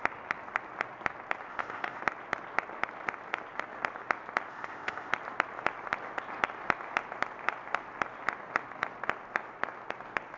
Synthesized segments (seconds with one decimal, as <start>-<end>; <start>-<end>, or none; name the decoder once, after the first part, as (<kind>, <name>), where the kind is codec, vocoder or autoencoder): 1.5-2.0 (codec, ZipCodec); 4.5-5.1